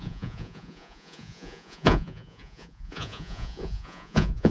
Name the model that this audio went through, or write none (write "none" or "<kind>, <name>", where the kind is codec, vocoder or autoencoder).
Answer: vocoder, Vocos